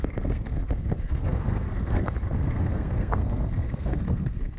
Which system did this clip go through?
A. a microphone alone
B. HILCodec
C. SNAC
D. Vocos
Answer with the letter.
C